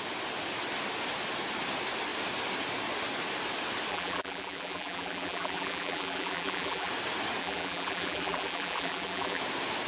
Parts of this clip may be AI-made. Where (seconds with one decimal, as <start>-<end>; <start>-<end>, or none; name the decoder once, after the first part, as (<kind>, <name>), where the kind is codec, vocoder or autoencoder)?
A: 3.9-6.9 (vocoder, BigVGAN v2); 7.4-9.4